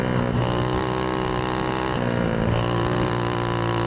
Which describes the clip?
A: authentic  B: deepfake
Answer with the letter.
A